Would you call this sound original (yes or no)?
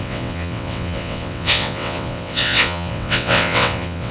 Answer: no